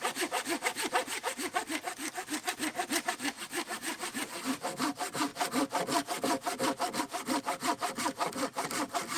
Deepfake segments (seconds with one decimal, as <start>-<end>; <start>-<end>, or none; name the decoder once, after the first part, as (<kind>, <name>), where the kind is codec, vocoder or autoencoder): none